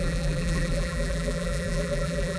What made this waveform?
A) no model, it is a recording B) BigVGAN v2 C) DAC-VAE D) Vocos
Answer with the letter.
B